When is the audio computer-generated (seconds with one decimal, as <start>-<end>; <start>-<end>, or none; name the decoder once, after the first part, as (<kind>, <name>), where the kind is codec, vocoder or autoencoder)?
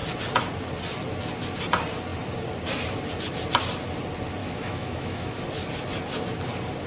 4.4-5.4 (autoencoder, DAC-VAE)